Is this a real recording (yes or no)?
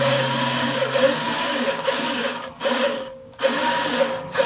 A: no